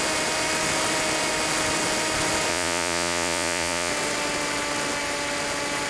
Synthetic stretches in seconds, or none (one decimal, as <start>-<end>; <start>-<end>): 2.5-3.9